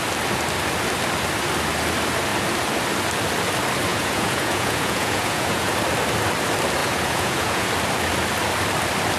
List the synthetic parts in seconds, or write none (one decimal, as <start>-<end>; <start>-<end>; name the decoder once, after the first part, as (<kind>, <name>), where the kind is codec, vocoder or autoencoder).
3.9-5.7 (vocoder, Vocos); 6.8-7.7